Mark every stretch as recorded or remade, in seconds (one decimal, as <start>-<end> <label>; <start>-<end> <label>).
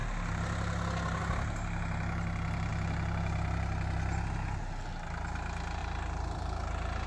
0.0-5.8 recorded; 5.8-7.1 remade